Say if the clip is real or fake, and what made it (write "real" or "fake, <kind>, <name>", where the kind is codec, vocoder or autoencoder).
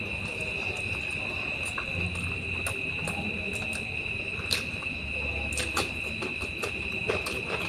real